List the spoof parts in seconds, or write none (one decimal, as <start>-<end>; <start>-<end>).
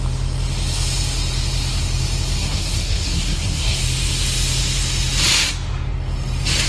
2.4-3.8